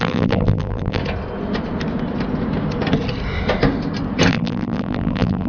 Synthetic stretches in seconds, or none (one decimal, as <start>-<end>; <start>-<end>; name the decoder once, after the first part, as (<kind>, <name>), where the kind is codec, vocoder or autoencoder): 0.0-1.0 (vocoder, BigVGAN v2); 4.3-5.5